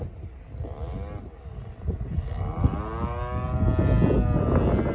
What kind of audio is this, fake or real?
real